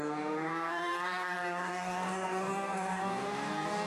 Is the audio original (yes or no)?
no